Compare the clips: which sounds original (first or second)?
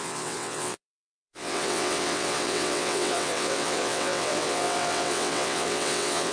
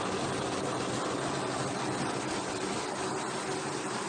second